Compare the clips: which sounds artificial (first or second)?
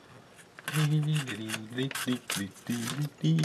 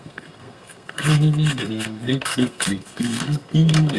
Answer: second